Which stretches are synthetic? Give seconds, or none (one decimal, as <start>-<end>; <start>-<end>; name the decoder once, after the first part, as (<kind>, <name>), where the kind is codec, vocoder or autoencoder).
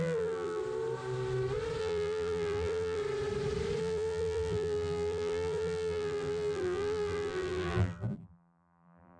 0.0-0.6 (vocoder, BigVGAN v2); 1.8-3.0; 3.8-9.2